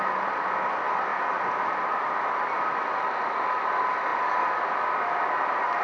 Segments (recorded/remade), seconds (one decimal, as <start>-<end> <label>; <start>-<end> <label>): 0.0-5.8 recorded